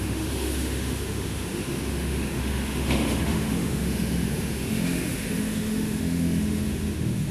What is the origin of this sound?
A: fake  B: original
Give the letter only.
A